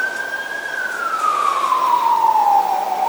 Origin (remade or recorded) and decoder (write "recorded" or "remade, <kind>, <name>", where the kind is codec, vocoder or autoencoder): recorded